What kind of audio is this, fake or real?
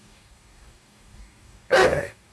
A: fake